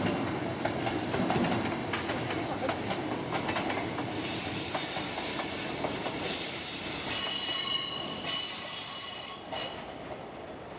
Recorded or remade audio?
recorded